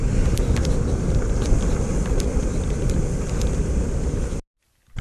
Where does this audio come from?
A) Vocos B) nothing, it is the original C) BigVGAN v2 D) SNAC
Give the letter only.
B